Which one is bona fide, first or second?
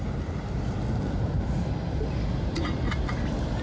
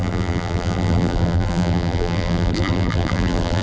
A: first